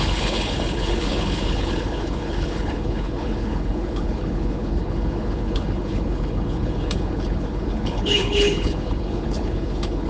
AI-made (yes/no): yes